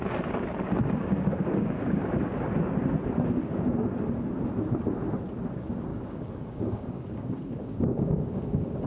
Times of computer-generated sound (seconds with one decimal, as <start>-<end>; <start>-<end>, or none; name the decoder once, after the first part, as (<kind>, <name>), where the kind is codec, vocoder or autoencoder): 0.8-2.1 (codec, DAC); 5.9-8.9